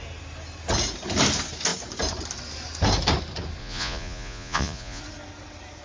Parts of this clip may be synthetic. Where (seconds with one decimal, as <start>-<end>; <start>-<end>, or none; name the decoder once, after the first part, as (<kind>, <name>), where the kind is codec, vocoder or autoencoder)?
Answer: 3.6-5.0 (vocoder, Vocos)